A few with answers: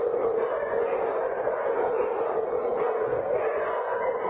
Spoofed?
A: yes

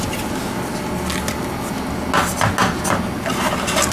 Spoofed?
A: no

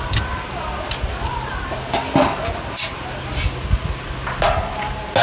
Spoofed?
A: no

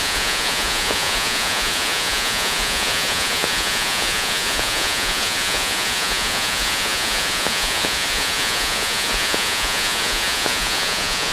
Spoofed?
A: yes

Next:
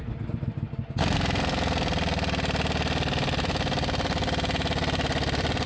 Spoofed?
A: no